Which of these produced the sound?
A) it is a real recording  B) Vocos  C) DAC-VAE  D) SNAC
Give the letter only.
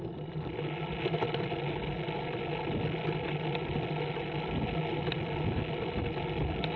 A